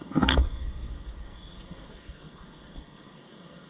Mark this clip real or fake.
fake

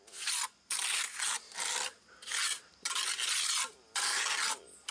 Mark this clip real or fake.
real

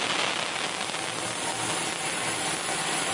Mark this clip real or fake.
real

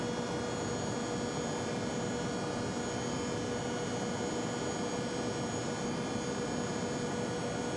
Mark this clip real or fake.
real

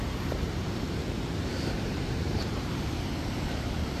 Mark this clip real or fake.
fake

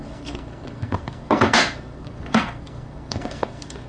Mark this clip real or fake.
fake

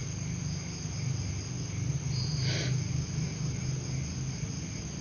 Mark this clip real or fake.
real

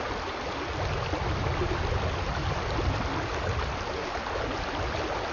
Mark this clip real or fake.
real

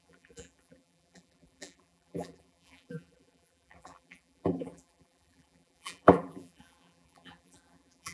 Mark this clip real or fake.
fake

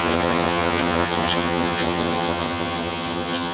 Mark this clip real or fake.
fake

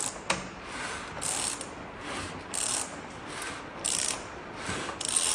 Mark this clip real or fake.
real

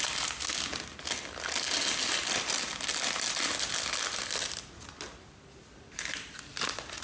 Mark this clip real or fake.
real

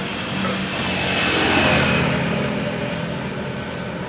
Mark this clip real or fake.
real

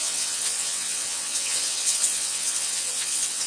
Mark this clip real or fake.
fake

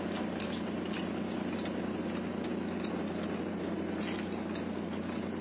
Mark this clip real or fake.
real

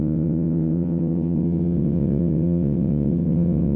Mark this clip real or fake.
fake